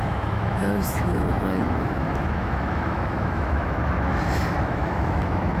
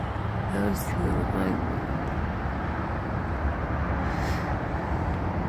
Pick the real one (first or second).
second